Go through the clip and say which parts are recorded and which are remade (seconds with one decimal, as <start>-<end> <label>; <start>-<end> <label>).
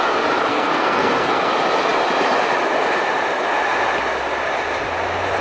0.0-0.5 recorded; 0.5-1.5 remade; 1.5-5.4 recorded